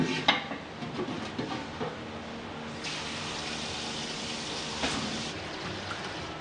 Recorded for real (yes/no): yes